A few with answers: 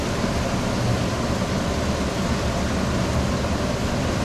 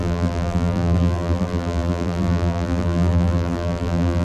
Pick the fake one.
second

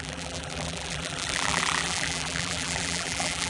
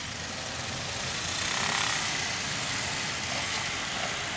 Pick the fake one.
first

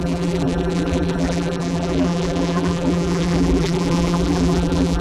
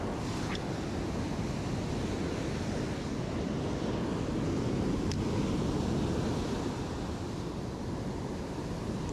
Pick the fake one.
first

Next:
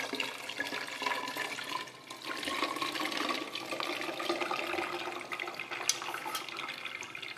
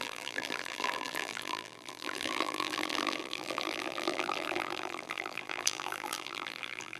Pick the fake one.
second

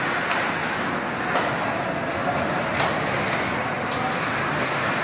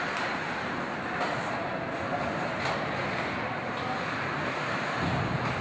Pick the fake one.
second